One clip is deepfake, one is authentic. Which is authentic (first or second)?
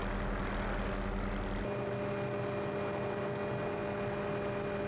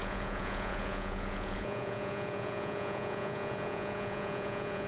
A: first